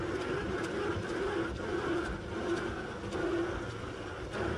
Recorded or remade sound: recorded